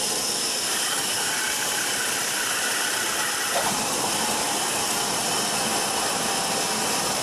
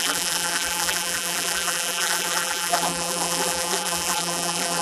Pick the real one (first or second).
first